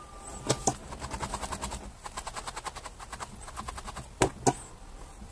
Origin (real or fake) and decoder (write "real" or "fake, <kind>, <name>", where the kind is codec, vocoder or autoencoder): real